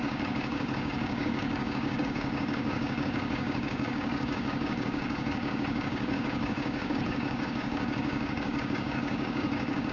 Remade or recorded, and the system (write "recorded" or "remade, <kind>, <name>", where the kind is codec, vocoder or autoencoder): remade, codec, DAC